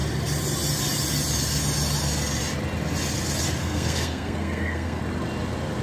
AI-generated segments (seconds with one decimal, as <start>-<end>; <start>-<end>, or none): 3.6-5.0